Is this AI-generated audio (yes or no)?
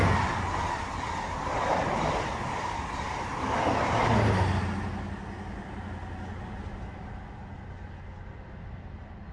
no